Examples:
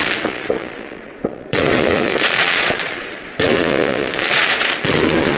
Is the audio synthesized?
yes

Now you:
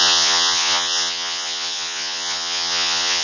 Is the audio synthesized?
yes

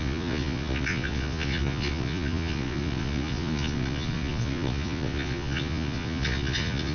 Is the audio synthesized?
yes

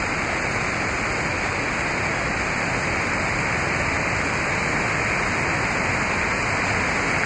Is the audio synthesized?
no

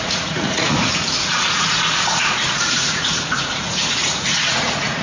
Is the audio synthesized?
yes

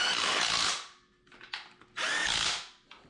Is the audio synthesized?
no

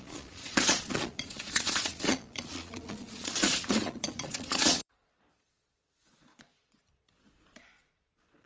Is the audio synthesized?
yes